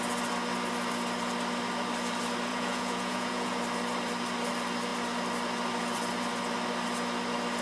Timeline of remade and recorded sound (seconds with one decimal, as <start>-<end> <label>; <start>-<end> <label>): 0.0-2.5 recorded; 2.5-3.6 remade; 3.6-7.6 recorded